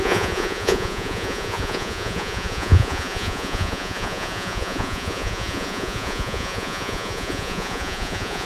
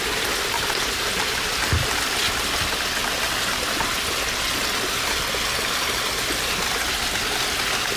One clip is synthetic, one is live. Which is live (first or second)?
second